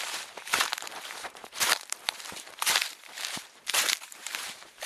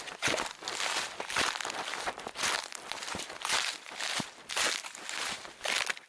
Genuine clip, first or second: second